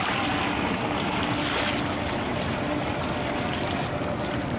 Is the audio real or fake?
real